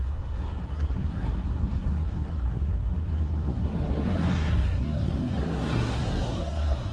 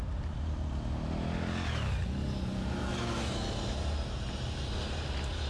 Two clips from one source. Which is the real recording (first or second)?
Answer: second